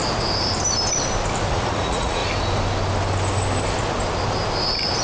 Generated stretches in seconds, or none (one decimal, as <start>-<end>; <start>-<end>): 1.5-2.2